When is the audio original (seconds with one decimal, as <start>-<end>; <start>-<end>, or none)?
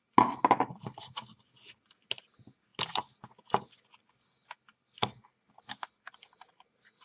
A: 0.0-7.0